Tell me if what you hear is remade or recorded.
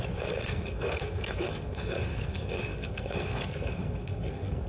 remade